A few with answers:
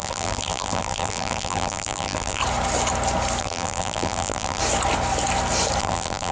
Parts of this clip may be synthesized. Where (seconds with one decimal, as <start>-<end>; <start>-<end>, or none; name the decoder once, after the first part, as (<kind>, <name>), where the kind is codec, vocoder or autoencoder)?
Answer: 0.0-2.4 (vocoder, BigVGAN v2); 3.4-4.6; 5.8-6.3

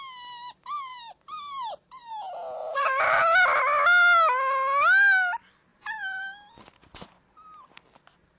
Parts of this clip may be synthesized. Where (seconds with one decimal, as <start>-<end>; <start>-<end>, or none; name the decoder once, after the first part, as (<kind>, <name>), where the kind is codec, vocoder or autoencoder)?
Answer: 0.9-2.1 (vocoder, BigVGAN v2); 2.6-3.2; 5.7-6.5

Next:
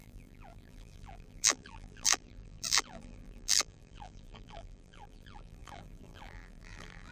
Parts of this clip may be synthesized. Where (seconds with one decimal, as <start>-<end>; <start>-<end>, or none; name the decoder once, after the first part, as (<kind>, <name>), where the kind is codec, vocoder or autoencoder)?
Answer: 0.0-7.1 (vocoder, BigVGAN v2)